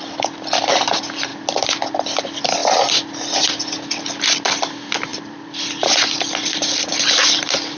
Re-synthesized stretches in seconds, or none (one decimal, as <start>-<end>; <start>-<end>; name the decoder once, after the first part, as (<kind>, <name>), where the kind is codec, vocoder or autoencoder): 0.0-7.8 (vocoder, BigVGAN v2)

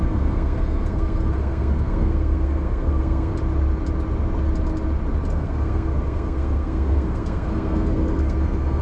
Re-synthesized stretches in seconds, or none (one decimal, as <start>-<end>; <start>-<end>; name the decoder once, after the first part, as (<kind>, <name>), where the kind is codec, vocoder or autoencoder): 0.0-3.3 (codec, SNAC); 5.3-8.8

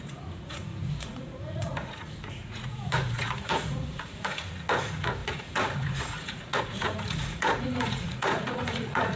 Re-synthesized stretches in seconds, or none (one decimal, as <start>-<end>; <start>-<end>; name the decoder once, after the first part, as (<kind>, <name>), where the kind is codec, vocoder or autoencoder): 0.0-9.2 (vocoder, Vocos)

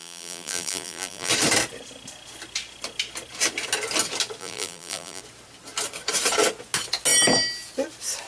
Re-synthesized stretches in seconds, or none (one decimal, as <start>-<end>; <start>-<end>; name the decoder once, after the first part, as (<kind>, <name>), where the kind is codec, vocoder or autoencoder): 0.0-1.3 (vocoder, BigVGAN v2); 4.4-5.2

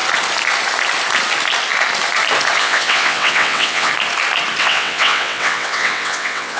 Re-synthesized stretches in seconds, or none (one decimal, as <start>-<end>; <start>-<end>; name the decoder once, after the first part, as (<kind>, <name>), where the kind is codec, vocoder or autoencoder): 2.6-3.9 (vocoder, WaveNeXt); 4.6-6.6

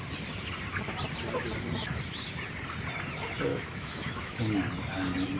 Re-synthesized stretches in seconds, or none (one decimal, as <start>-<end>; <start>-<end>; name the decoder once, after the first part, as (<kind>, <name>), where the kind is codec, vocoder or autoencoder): 3.5-4.4 (autoencoder, DAC-VAE)

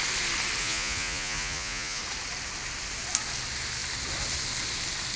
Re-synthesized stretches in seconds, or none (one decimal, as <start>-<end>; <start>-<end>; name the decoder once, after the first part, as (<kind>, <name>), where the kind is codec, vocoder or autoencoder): 0.6-2.0 (vocoder, Vocos)

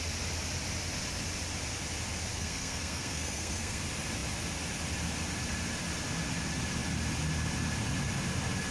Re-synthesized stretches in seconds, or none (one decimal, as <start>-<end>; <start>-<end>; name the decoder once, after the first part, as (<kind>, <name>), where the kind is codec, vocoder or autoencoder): 2.3-3.8 (codec, SNAC)